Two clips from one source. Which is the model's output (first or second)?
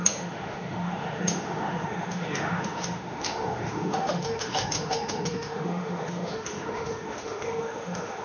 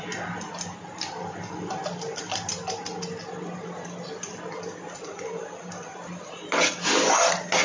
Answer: first